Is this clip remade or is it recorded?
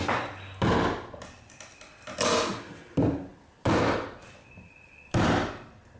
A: recorded